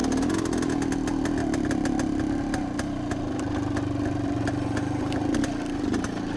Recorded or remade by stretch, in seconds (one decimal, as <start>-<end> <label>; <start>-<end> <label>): 0.0-6.4 recorded